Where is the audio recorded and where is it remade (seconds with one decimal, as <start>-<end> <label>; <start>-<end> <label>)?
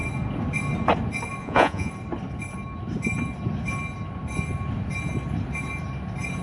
0.0-1.4 recorded; 1.4-1.9 remade; 1.9-6.4 recorded